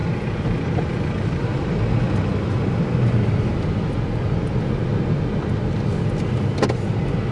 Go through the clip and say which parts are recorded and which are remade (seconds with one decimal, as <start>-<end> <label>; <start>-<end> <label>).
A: 0.0-7.3 recorded